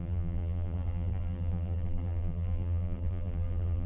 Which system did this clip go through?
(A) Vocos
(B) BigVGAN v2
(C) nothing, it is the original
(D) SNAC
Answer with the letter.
B